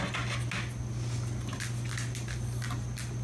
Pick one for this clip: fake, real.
real